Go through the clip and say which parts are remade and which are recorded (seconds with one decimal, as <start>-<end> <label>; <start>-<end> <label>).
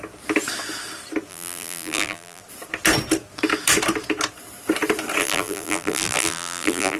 0.0-1.3 recorded; 1.3-2.4 remade; 2.4-5.2 recorded; 5.2-7.0 remade